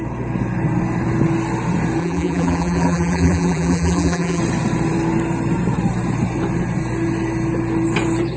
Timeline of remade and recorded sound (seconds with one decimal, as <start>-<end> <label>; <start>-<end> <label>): 0.0-2.0 recorded; 2.0-4.4 remade; 4.4-8.4 recorded